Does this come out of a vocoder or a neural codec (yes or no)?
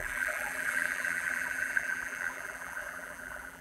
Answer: yes